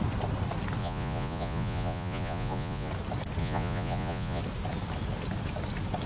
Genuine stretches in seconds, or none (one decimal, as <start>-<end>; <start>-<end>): 0.0-0.8; 2.9-3.4; 4.4-6.1